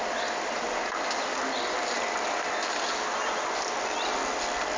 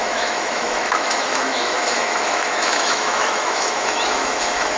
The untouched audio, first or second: first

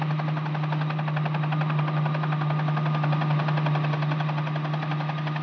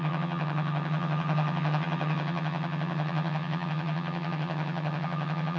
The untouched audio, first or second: first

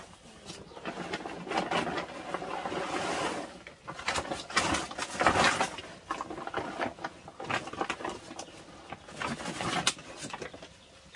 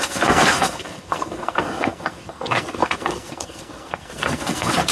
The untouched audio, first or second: first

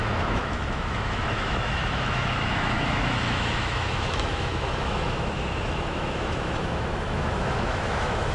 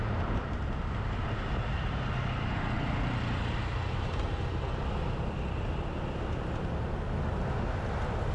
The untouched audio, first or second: second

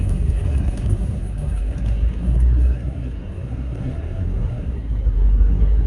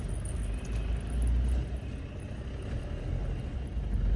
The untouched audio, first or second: second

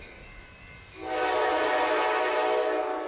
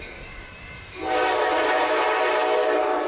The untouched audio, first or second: first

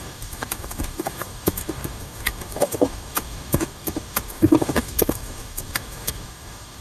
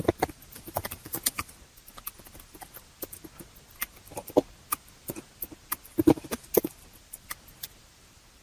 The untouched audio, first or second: second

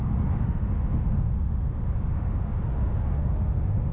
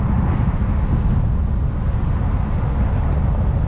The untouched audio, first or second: second